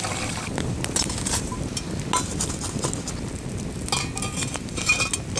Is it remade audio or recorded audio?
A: recorded